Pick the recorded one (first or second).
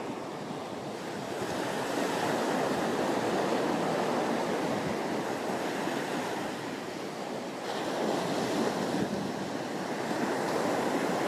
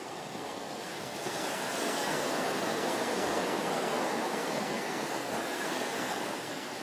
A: first